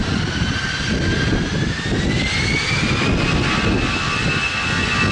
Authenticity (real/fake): real